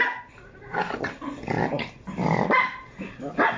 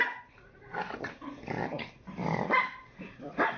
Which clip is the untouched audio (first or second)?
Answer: first